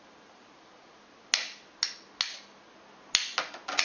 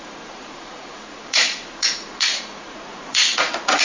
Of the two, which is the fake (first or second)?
second